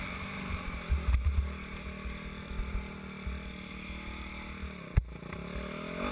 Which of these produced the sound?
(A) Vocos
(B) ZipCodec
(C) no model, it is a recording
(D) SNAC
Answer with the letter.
C